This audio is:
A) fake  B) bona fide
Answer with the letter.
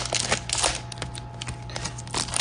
B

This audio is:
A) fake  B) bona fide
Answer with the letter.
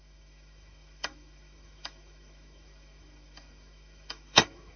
A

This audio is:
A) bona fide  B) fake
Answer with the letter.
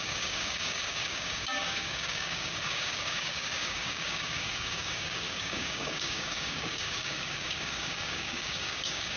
B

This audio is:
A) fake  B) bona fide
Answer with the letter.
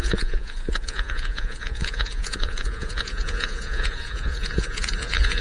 A